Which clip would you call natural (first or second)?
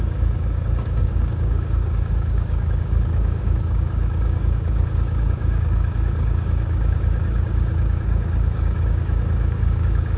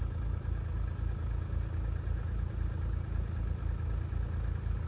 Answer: second